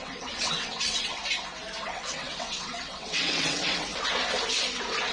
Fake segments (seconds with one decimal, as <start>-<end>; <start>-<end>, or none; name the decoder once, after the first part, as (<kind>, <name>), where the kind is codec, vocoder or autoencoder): 0.0-1.2 (vocoder, WaveNeXt); 1.8-3.9